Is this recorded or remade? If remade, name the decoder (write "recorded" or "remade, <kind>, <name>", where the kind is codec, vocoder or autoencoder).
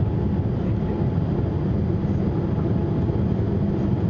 recorded